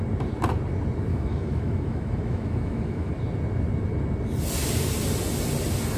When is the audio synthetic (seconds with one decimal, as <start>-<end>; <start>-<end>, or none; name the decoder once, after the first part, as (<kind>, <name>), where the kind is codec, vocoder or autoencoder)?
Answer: 1.1-3.1 (autoencoder, DAC-VAE)